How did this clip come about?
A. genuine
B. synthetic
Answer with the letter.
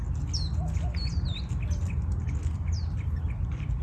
A